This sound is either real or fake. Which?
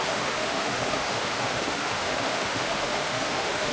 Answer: fake